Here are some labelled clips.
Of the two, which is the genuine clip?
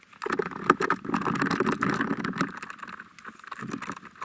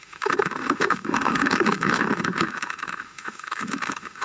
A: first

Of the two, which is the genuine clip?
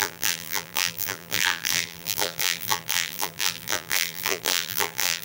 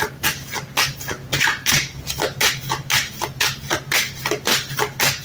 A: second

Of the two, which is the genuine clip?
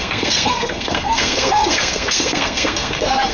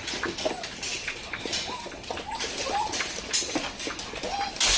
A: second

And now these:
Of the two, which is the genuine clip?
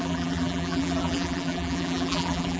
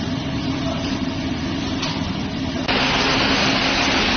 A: second